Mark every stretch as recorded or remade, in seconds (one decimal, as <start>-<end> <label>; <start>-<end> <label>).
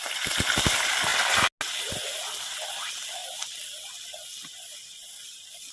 0.0-5.7 recorded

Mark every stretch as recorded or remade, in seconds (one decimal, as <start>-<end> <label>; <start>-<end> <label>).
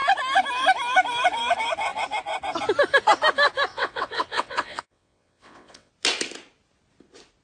0.0-3.7 recorded; 3.7-5.9 remade; 5.9-7.4 recorded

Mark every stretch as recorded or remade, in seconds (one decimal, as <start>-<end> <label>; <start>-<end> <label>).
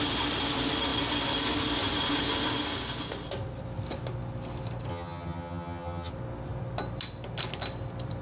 0.0-4.9 recorded; 4.9-6.1 remade; 6.1-8.2 recorded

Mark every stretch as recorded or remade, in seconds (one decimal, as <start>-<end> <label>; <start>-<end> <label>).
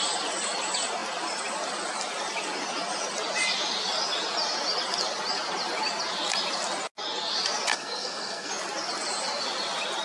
0.0-7.7 recorded; 7.7-8.5 remade; 8.5-10.0 recorded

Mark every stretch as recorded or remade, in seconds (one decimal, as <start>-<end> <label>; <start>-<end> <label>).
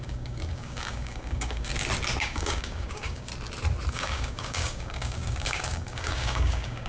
0.0-1.7 remade; 1.7-2.2 recorded; 2.2-3.3 remade; 3.3-3.9 recorded; 3.9-6.9 remade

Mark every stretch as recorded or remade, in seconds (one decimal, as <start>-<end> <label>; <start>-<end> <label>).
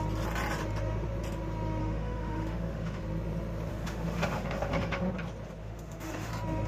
0.0-1.8 recorded; 1.8-3.0 remade; 3.0-3.7 recorded; 3.7-5.0 remade; 5.0-5.6 recorded; 5.6-6.3 remade; 6.3-6.7 recorded